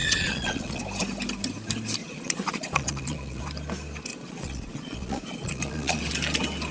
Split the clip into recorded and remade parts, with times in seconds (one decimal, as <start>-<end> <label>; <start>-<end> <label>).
0.0-0.8 remade; 0.8-2.0 recorded; 2.0-3.4 remade; 3.4-4.1 recorded; 4.1-6.0 remade; 6.0-6.7 recorded